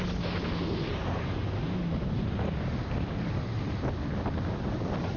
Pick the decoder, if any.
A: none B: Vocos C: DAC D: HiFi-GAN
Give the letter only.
A